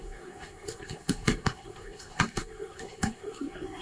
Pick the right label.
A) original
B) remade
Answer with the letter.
B